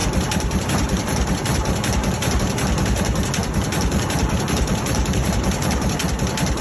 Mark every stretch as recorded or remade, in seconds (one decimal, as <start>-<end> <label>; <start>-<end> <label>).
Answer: 0.0-2.4 remade; 2.4-3.4 recorded; 3.4-6.0 remade; 6.0-6.6 recorded